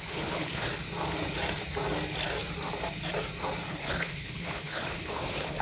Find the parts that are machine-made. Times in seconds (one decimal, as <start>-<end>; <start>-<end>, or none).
0.0-0.7; 3.7-5.6